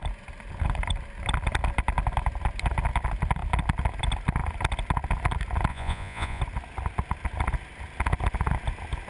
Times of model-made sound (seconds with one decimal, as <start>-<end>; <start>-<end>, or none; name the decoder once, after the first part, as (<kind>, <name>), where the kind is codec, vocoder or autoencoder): 5.7-6.4 (vocoder, Vocos)

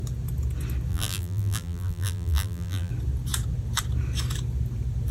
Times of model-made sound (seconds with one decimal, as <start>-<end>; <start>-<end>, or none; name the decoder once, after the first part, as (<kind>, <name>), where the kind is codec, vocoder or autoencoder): 0.9-2.9 (vocoder, BigVGAN v2)